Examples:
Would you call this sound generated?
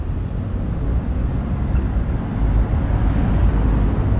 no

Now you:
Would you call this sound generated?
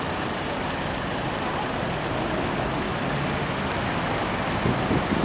no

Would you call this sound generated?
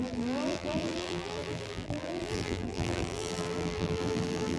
yes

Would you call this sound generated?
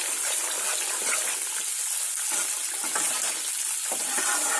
no